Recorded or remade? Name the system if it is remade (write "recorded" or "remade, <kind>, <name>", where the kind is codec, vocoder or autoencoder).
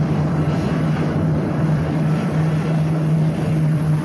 remade, vocoder, BigVGAN v2